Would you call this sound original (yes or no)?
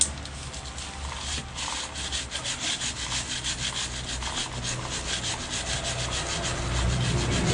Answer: yes